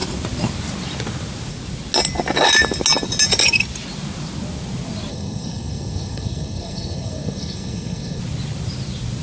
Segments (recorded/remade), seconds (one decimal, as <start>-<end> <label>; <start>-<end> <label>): 0.0-5.1 recorded; 5.1-8.2 remade; 8.2-9.2 recorded